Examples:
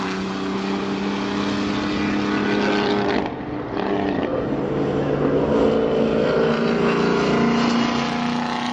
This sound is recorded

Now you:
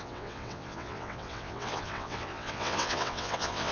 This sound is remade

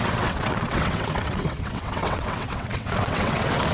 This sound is remade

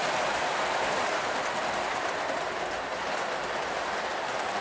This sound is recorded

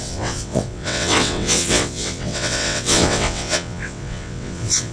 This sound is remade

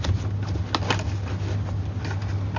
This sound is recorded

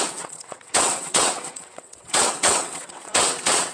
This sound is remade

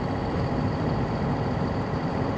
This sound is recorded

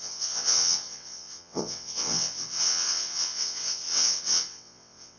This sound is remade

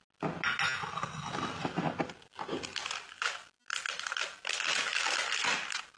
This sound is recorded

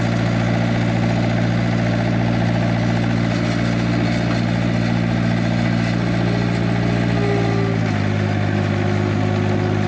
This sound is recorded